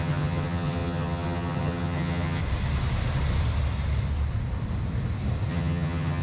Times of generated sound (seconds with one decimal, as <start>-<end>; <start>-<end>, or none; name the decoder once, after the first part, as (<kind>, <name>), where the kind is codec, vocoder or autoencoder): 0.0-2.4 (vocoder, HiFi-GAN); 5.5-6.2